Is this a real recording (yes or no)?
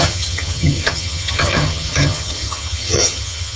no